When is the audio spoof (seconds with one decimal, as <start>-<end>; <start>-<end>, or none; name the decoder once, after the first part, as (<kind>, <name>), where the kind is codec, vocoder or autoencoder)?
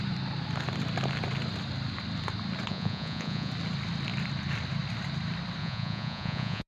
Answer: 2.7-3.5 (vocoder, Vocos); 5.6-6.7